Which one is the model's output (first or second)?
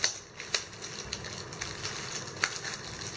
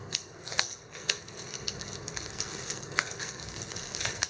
second